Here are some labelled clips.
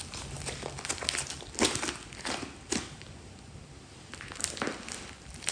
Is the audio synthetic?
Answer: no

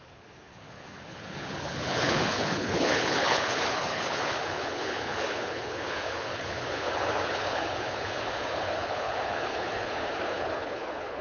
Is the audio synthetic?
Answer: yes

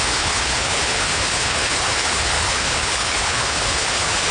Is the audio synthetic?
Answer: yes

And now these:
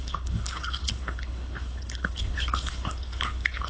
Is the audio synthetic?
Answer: yes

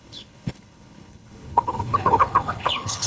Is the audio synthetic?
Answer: yes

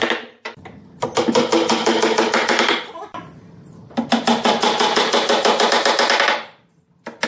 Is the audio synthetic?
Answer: no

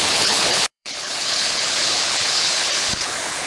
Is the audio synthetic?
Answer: yes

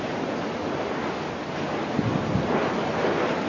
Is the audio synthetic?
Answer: no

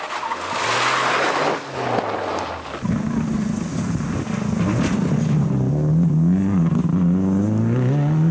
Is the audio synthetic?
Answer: no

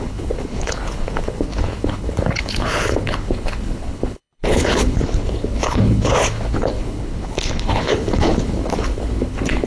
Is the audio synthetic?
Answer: yes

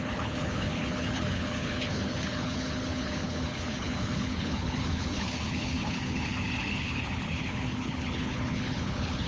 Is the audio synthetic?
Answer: yes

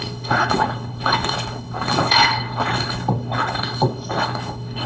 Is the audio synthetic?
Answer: yes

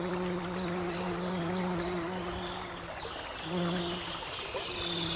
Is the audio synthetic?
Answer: no